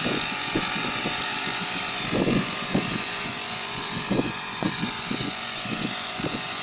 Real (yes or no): no